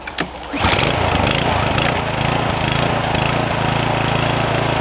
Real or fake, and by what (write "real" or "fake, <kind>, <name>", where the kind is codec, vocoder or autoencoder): real